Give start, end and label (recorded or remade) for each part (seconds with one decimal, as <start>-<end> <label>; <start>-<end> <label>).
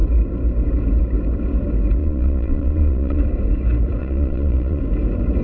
0.0-2.0 recorded; 2.0-3.2 remade; 3.2-4.0 recorded; 4.0-4.8 remade; 4.8-5.4 recorded